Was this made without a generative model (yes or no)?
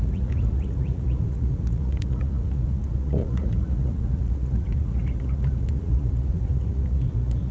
no